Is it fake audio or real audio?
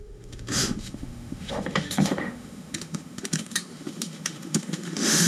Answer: fake